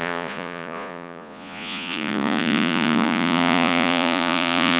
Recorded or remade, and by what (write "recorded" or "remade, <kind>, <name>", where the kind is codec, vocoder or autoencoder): remade, vocoder, Vocos